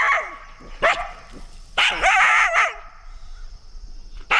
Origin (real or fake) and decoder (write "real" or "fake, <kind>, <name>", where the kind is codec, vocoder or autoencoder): fake, vocoder, BigVGAN v2